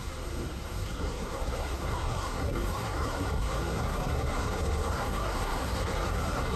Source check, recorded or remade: remade